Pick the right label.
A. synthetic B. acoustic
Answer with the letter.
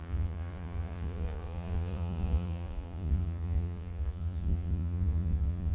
A